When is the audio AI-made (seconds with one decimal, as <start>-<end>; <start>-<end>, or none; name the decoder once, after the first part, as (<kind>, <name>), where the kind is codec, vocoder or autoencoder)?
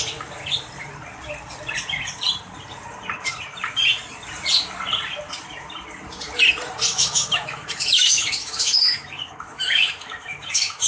6.9-10.9 (autoencoder, DAC-VAE)